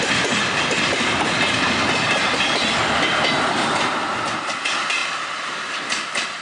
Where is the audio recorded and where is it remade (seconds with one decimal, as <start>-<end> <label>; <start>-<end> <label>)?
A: 0.0-6.4 recorded